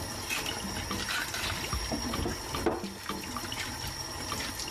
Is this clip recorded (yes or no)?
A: yes